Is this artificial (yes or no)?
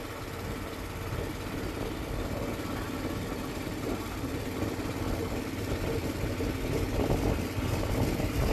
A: no